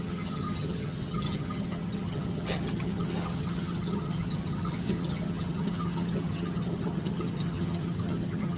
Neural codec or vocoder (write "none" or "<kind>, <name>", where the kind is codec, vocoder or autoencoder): vocoder, HiFi-GAN